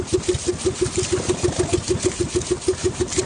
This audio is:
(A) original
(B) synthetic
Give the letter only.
A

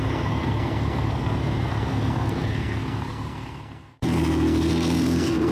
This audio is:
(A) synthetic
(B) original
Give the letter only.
A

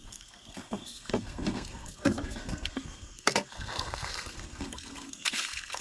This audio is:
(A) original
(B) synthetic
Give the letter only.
B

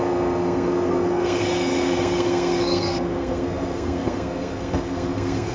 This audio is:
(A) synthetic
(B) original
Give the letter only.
A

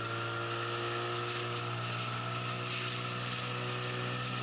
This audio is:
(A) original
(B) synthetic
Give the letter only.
A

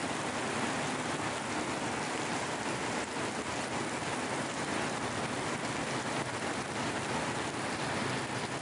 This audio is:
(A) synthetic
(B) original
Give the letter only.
B